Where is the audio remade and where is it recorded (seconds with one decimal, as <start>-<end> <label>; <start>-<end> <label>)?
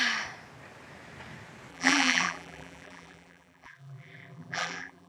0.0-1.7 recorded; 1.7-5.1 remade